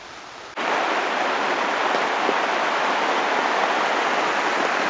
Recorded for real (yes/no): yes